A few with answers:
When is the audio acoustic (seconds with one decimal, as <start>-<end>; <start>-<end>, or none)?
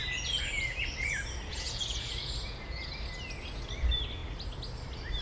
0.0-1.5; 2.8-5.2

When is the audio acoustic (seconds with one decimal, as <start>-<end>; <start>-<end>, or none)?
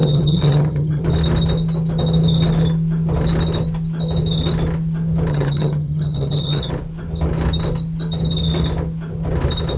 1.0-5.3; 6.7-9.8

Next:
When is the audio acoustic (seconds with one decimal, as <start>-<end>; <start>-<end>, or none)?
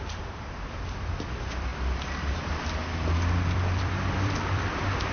none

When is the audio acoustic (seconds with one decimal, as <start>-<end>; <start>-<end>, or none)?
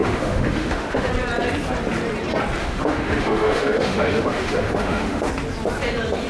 1.1-2.6; 5.3-6.3